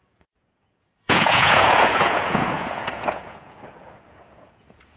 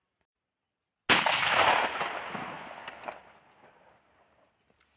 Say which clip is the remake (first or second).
first